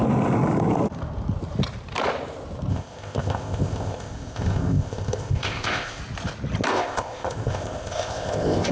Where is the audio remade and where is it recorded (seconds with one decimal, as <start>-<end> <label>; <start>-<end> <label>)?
0.0-2.7 recorded; 2.7-6.0 remade; 6.0-6.7 recorded; 6.7-8.7 remade